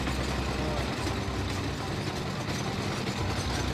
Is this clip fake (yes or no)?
no